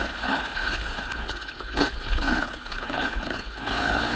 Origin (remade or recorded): remade